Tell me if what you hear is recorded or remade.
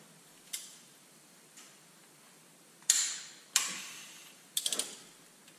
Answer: recorded